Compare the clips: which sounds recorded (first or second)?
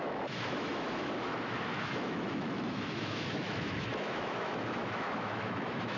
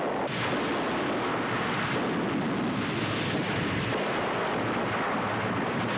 second